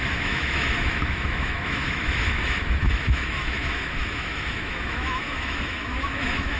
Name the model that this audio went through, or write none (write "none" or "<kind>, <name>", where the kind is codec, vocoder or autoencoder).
autoencoder, DAC-VAE